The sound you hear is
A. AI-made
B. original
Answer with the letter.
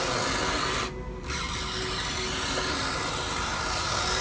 B